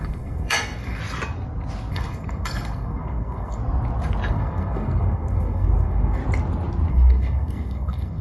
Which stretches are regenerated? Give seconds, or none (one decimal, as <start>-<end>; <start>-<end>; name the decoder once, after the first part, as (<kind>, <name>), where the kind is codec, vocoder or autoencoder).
0.0-1.0 (codec, SNAC); 1.9-3.6; 4.3-6.2; 6.9-8.2